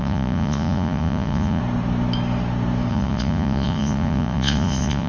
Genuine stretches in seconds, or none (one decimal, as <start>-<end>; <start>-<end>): 1.6-2.9

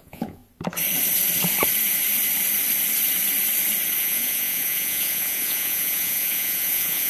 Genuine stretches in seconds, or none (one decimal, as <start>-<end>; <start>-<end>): 0.4-4.0

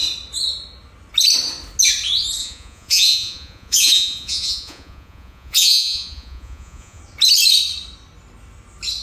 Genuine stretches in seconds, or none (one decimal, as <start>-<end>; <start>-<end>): 0.0-2.4; 7.0-9.0

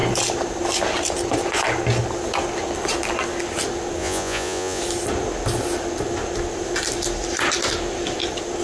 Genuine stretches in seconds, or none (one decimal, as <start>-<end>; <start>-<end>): 0.0-4.0; 4.8-8.6

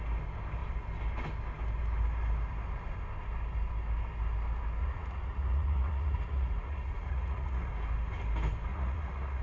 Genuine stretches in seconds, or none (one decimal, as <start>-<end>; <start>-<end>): 0.0-4.8; 7.7-8.7

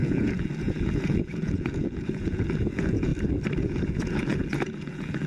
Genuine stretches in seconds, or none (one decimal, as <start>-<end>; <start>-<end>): 3.1-3.6

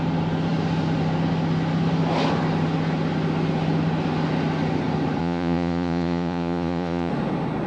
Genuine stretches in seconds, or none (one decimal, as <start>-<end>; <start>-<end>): 0.0-5.2; 7.1-7.7